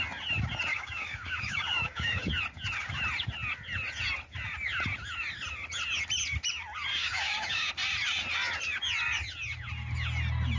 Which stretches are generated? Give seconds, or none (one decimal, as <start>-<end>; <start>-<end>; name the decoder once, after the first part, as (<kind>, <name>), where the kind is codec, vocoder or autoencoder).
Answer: 0.7-2.3 (codec, DAC); 6.9-7.7